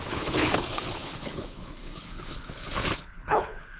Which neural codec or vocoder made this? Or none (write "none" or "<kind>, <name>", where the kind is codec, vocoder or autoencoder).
codec, HILCodec